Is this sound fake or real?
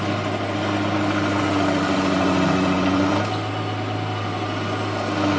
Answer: real